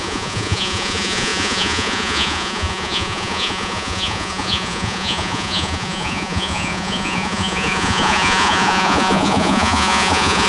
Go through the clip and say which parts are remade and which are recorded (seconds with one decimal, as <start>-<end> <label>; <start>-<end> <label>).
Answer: 0.0-10.5 remade